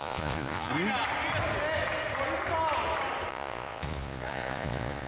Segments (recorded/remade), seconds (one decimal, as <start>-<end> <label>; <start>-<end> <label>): 0.0-0.7 remade; 0.7-3.3 recorded; 3.3-5.1 remade